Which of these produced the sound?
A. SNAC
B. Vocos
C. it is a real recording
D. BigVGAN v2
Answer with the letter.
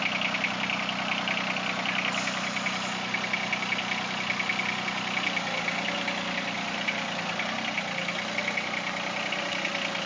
C